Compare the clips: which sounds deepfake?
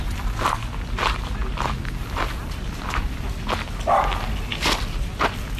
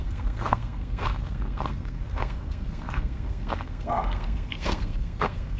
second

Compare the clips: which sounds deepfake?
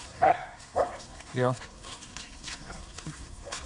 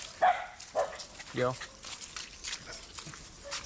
first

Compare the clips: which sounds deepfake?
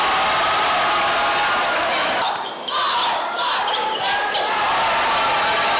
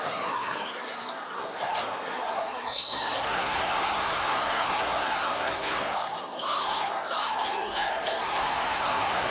second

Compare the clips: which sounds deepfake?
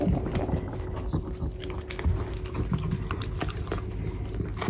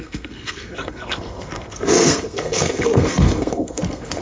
second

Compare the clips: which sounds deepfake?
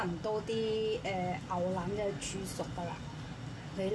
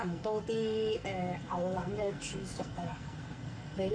second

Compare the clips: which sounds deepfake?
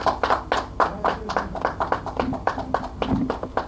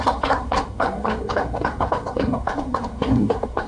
second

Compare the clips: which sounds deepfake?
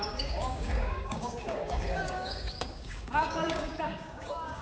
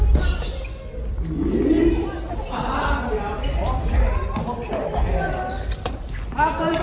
first